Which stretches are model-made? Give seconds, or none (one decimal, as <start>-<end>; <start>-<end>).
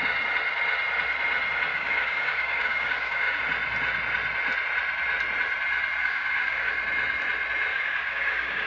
1.7-3.4; 6.0-6.7; 7.7-8.7